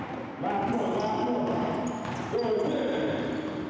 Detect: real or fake real